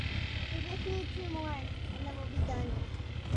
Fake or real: real